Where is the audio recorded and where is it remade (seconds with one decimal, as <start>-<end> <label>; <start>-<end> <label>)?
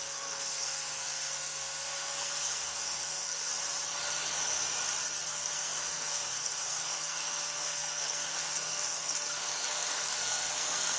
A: 0.0-3.5 remade; 3.5-5.3 recorded; 5.3-11.0 remade